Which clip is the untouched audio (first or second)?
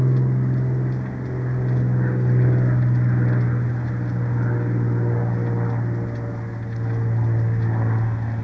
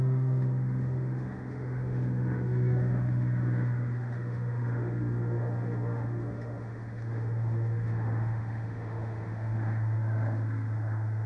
first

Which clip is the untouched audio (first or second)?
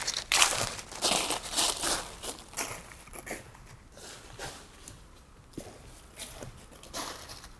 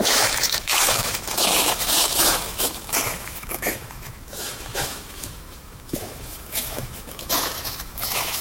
first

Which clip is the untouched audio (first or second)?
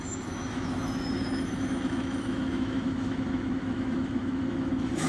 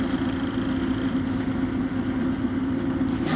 second